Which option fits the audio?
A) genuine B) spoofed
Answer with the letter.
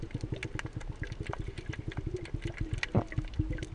A